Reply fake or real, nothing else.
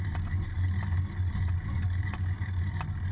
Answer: real